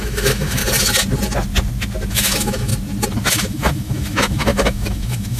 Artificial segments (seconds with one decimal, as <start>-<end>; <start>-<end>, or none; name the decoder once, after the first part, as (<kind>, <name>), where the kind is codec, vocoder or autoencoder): 0.0-0.6 (autoencoder, DAC-VAE); 2.1-2.7; 3.3-5.4